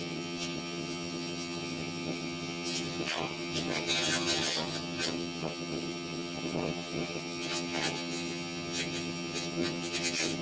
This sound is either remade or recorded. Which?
remade